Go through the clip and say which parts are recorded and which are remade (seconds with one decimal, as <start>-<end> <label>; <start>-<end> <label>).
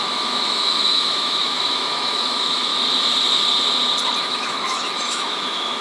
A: 0.0-2.7 remade; 2.7-4.2 recorded; 4.2-5.8 remade